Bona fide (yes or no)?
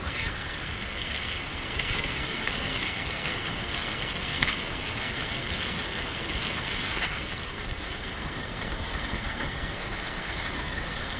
no